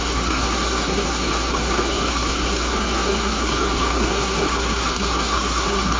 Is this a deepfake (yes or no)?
yes